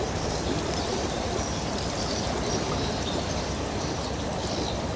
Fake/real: fake